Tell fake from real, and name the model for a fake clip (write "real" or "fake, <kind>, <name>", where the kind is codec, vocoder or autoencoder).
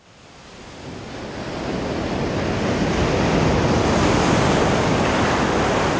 real